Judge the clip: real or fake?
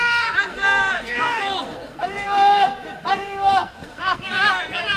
fake